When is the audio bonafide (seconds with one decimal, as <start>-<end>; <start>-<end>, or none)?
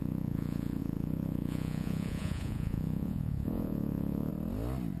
4.3-5.0